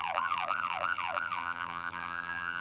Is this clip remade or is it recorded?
remade